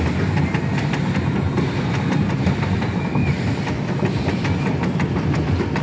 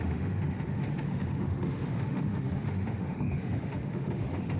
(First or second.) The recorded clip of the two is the first